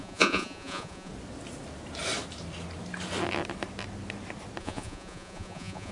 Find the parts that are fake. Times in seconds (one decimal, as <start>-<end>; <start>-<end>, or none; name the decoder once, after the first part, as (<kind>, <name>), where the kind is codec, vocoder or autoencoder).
0.0-1.1 (vocoder, Vocos); 4.6-5.9